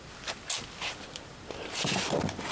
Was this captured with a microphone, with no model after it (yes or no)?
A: no